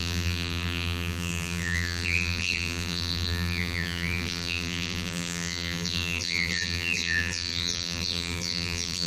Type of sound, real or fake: fake